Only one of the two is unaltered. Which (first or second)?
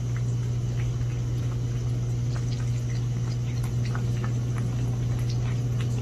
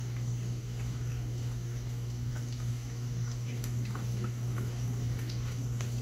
first